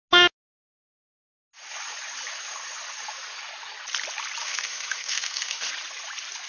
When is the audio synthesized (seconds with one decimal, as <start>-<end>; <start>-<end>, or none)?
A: 4.4-5.7